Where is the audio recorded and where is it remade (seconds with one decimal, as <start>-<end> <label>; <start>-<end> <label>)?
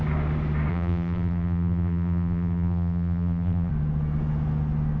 0.0-0.7 recorded; 0.7-3.7 remade; 3.7-5.0 recorded